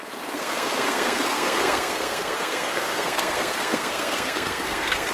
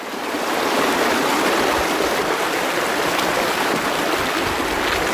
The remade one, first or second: first